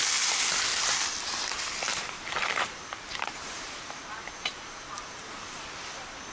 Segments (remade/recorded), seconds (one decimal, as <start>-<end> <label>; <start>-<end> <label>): 0.0-1.9 recorded; 1.9-5.7 remade; 5.7-6.3 recorded